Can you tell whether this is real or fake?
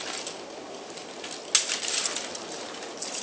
real